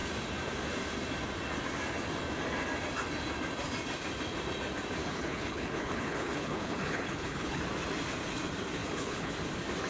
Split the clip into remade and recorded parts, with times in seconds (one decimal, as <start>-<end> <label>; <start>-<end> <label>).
0.0-5.0 recorded; 5.0-7.6 remade; 7.6-8.8 recorded; 8.8-9.3 remade; 9.3-9.9 recorded

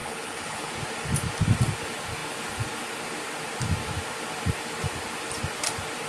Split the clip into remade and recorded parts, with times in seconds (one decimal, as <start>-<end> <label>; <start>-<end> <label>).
0.0-0.7 remade; 0.7-6.1 recorded